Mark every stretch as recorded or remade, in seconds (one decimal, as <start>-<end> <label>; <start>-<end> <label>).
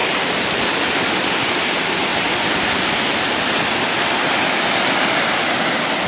0.0-6.1 recorded